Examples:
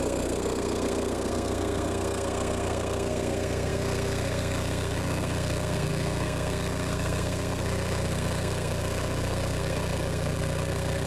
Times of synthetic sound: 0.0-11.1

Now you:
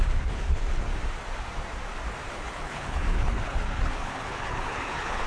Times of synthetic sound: 0.0-0.9; 2.3-5.3

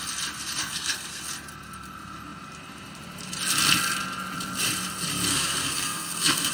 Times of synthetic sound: 0.6-1.2; 5.3-6.5

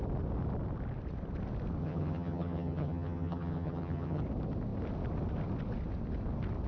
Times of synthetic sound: 1.8-4.2